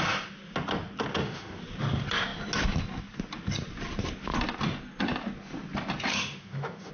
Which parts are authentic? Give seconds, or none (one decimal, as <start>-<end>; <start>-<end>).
0.0-1.1; 1.6-6.1